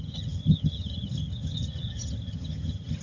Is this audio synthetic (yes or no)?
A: yes